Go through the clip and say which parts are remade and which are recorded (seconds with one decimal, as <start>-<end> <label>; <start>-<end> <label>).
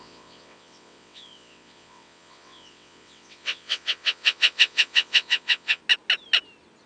0.0-5.8 remade; 5.8-6.9 recorded